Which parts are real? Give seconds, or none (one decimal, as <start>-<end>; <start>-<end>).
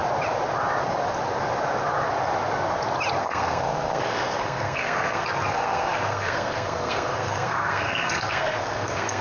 0.0-3.2